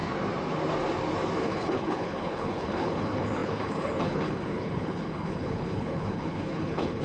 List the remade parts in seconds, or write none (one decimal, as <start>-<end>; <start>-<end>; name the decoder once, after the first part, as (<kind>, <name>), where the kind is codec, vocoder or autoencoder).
1.4-7.0 (codec, HILCodec)